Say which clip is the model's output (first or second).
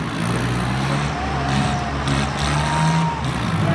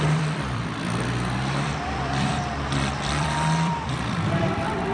second